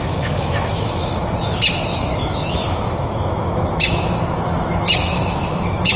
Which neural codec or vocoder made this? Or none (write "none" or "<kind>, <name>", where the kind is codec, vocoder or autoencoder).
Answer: autoencoder, DAC-VAE